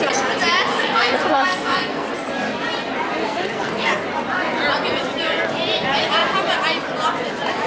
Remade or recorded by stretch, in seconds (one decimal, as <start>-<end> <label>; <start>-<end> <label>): 0.0-0.7 recorded; 0.7-2.1 remade; 2.1-3.2 recorded; 3.2-3.9 remade; 3.9-7.7 recorded